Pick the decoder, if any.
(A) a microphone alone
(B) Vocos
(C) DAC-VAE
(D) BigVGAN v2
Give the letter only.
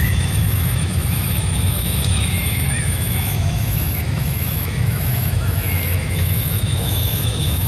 C